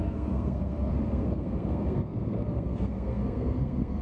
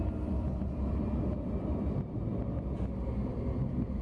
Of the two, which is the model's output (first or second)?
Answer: first